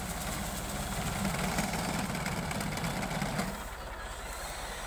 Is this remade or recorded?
recorded